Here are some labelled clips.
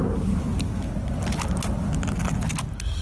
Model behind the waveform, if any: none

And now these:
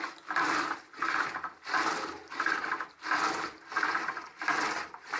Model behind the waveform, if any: vocoder, BigVGAN v2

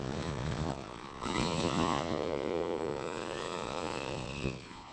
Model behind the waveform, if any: vocoder, Vocos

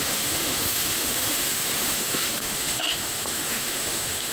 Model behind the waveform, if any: autoencoder, DAC-VAE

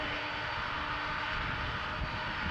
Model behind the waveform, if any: none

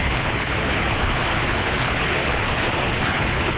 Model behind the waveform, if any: codec, HILCodec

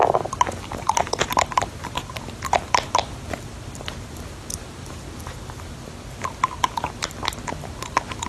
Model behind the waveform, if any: none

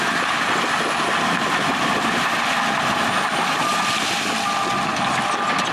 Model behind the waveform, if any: none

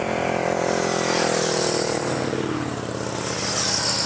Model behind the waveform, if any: none